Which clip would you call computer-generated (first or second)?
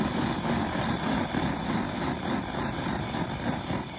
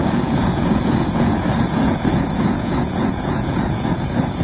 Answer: second